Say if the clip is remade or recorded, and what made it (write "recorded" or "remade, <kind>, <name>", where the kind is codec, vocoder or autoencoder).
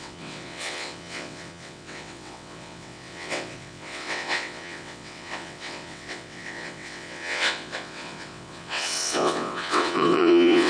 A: remade, vocoder, WaveNeXt